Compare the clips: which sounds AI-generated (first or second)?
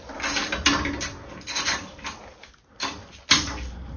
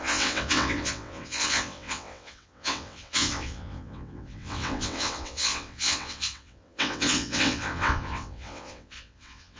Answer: second